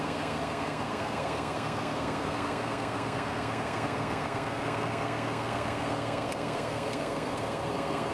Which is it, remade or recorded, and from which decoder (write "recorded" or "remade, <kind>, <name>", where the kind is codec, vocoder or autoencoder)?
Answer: remade, codec, SNAC